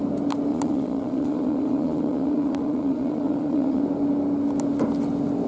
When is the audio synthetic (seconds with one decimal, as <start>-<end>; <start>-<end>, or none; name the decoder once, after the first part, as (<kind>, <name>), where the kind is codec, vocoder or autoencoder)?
0.5-3.8 (vocoder, Vocos)